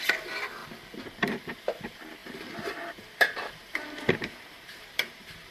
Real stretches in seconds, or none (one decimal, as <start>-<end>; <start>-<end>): 0.0-2.2